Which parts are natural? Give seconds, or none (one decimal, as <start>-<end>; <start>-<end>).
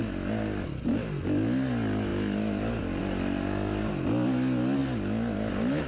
0.0-5.9